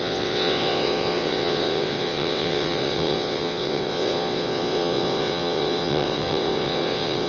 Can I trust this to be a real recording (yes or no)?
no